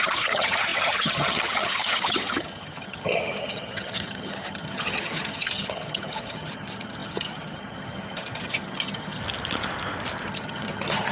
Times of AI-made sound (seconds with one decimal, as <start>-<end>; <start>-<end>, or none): 0.0-9.2; 10.3-11.1